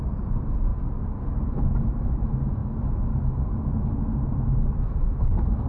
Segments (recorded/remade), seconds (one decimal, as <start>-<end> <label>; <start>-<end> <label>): 0.0-5.7 recorded